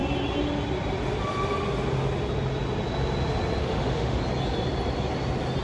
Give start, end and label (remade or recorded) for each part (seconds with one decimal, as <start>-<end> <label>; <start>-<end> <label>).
0.0-3.6 recorded; 3.6-4.2 remade; 4.2-5.6 recorded